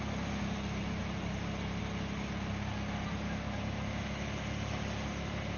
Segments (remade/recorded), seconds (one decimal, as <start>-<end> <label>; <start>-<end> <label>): 0.0-1.0 recorded; 1.0-1.8 remade; 1.8-5.6 recorded